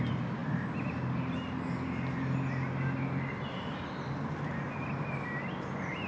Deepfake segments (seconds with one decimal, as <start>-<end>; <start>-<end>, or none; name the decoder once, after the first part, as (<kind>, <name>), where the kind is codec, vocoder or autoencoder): none